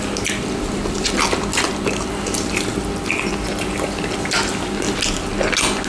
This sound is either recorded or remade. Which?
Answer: recorded